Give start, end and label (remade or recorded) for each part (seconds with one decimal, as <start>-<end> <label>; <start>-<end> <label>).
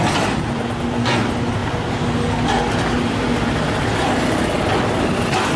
0.0-5.6 recorded